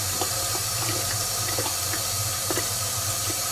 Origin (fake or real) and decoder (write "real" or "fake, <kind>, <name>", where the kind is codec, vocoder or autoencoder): real